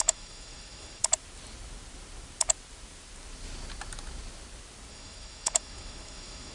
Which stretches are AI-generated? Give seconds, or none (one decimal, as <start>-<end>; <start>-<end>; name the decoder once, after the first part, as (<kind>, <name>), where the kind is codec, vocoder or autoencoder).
0.0-1.0 (autoencoder, DAC-VAE); 4.9-6.5